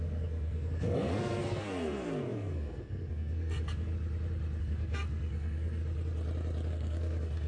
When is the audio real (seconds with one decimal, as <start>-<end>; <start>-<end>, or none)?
3.9-4.6; 5.8-6.7

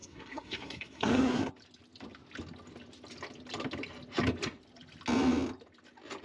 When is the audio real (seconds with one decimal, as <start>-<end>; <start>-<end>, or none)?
1.5-6.2